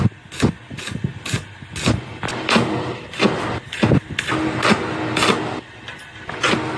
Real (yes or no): yes